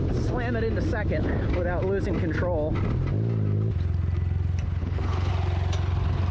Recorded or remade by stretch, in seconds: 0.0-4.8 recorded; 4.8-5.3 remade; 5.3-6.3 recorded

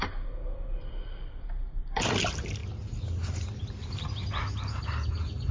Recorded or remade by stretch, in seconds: 0.0-5.5 recorded